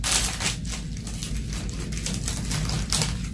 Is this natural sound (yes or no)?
yes